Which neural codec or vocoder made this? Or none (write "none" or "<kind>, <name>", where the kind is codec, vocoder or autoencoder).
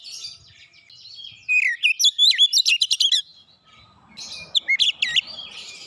none